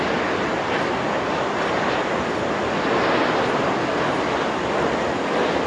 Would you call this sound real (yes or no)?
yes